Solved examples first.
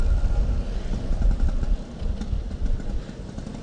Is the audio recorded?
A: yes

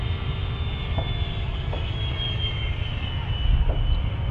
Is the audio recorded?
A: yes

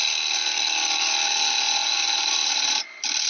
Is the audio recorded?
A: yes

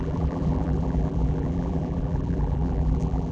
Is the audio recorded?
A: no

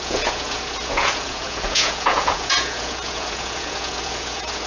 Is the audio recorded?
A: no